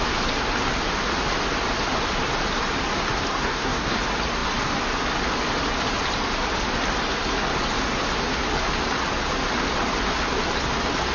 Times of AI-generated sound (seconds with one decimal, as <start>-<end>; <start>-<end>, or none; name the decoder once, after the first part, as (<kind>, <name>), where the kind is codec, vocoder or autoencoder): 3.3-4.0 (codec, SNAC)